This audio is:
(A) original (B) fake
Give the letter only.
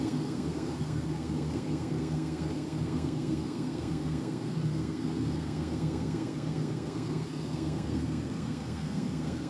B